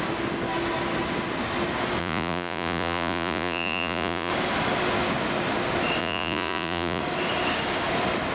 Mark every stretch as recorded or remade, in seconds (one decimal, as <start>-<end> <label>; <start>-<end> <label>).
0.0-2.0 recorded; 2.0-4.3 remade; 4.3-6.0 recorded; 6.0-7.0 remade; 7.0-8.3 recorded